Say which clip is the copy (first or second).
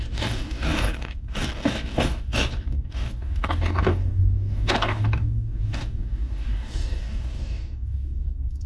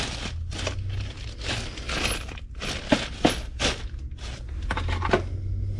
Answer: first